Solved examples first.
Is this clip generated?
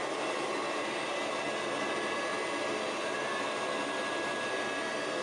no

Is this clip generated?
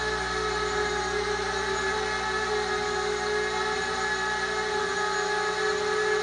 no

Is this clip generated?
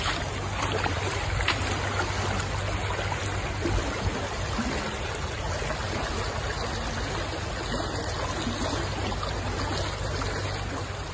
no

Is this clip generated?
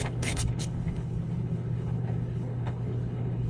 yes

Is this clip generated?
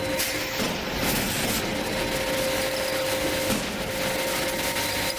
no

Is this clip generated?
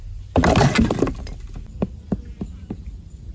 no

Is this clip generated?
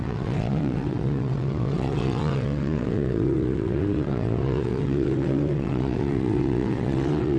yes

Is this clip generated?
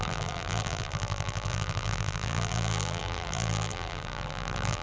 yes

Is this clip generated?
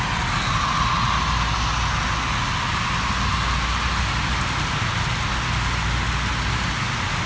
no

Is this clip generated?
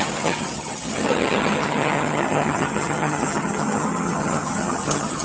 yes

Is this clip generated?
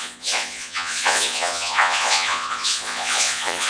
yes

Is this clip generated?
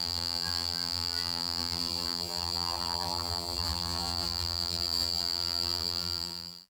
yes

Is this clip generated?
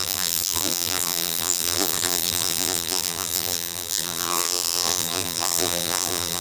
yes